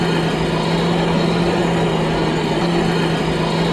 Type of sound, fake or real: real